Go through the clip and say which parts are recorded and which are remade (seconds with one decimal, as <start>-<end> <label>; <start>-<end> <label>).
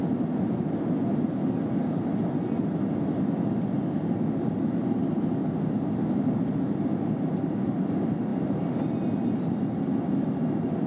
0.0-10.9 recorded